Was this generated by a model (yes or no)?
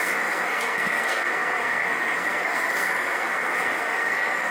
yes